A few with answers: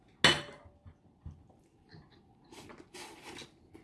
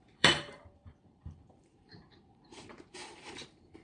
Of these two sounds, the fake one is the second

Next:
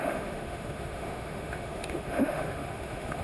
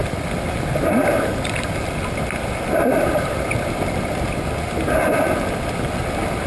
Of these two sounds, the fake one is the first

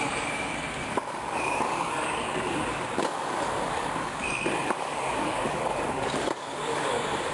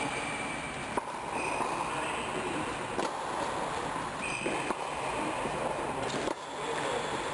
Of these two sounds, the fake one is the first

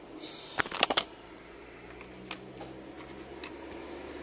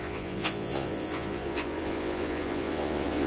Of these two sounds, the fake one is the second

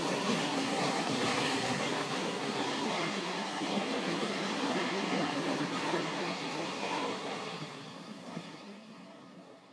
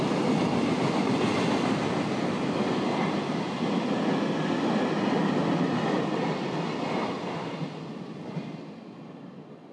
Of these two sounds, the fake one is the first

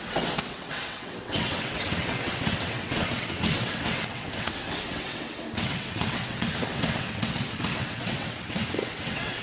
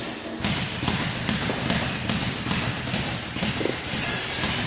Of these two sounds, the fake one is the first